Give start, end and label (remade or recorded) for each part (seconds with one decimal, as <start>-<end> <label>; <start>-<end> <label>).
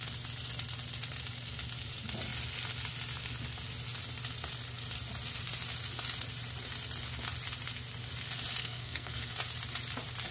0.0-8.6 recorded; 8.6-9.3 remade; 9.3-10.3 recorded